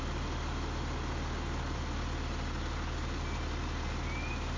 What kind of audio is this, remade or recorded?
recorded